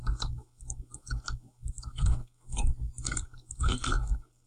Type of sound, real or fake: fake